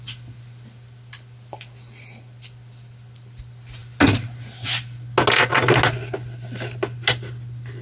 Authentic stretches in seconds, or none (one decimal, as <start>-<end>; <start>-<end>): 0.0-7.8